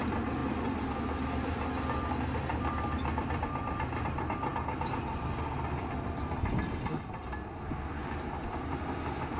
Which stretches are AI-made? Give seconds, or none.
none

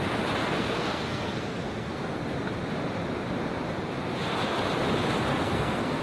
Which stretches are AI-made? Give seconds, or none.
0.4-2.2 (codec, SNAC); 5.3-6.0

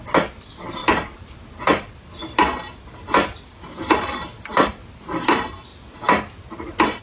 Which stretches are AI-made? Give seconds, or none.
none